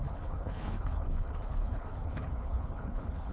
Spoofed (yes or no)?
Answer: yes